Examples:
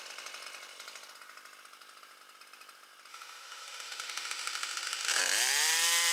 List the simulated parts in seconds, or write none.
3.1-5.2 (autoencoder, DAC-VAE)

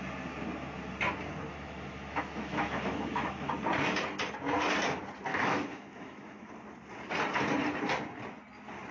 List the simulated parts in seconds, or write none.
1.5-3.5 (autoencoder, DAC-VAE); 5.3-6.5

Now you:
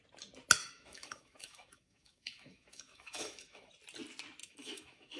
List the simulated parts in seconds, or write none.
0.6-3.7 (autoencoder, DAC-VAE); 4.4-5.2

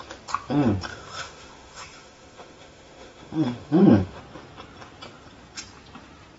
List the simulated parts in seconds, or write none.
0.9-4.2 (autoencoder, DAC-VAE)

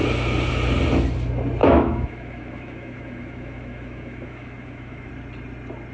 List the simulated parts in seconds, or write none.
1.6-5.1 (autoencoder, DAC-VAE)